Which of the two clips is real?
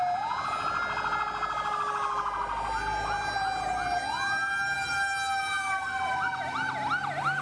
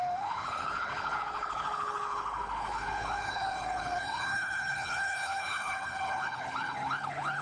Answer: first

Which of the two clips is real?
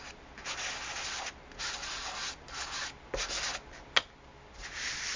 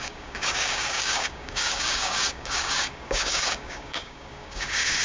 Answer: first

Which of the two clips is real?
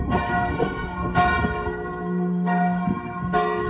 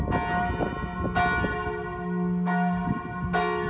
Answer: second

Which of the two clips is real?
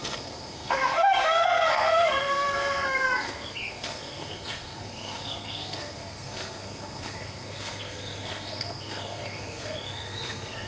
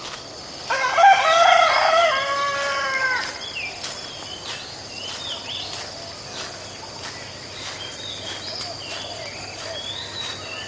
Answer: second